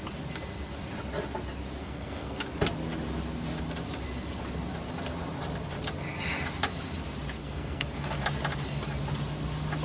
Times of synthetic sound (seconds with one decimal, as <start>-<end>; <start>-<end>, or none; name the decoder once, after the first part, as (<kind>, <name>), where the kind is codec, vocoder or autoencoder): 1.8-2.4 (codec, SNAC); 7.4-8.2